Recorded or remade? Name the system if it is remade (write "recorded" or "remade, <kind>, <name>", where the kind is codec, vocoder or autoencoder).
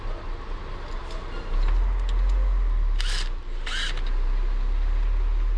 recorded